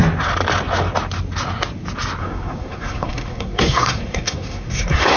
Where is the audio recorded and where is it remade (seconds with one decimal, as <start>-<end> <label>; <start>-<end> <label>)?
0.0-2.2 recorded; 2.2-5.2 remade